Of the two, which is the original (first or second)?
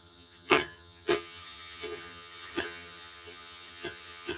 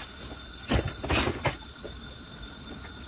second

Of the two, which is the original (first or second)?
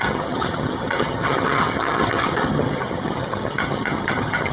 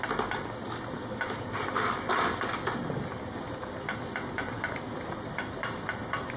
second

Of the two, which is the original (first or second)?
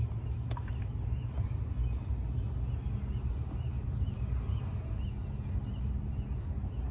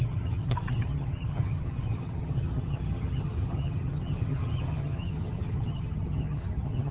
first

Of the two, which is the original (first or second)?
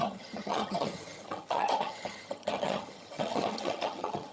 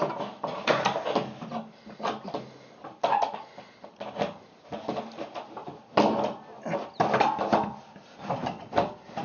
second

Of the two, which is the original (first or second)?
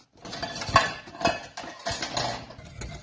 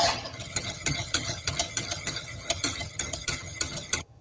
first